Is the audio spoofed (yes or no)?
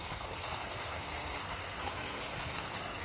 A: yes